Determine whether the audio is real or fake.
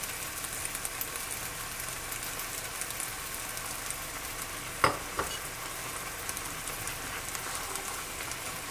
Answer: real